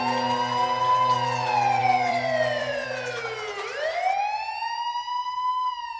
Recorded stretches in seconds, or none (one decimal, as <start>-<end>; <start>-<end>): 0.0-1.8; 3.2-6.0